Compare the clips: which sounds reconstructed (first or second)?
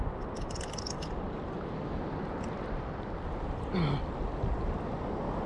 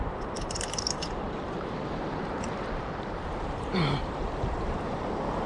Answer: second